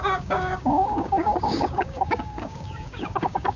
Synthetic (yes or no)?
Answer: yes